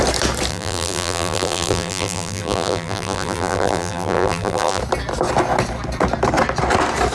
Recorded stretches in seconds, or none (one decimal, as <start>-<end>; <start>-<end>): 0.0-0.5; 4.8-7.1